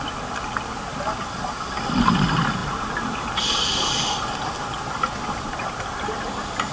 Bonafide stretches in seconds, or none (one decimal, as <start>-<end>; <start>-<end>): 0.0-6.7